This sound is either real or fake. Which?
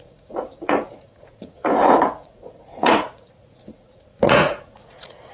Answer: fake